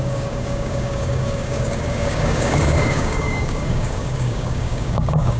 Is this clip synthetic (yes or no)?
yes